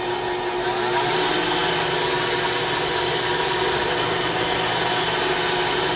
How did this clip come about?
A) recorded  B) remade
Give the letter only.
B